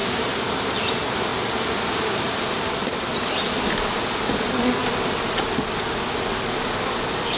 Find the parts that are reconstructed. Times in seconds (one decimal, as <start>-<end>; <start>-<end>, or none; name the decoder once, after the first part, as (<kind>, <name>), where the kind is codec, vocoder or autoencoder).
1.3-5.0 (vocoder, BigVGAN v2)